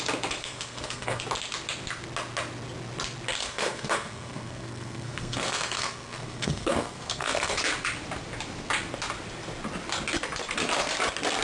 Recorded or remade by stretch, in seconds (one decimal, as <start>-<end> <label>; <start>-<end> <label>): 0.0-0.4 recorded; 0.4-1.2 remade; 1.2-3.4 recorded; 3.4-7.6 remade; 7.6-11.4 recorded